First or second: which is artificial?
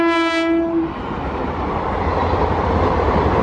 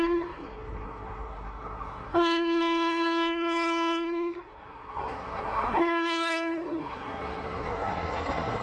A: second